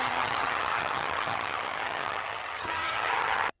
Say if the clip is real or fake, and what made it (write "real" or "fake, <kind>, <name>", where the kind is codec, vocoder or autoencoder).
fake, vocoder, HiFi-GAN